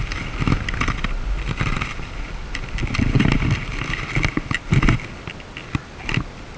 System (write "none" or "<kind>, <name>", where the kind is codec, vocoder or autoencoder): none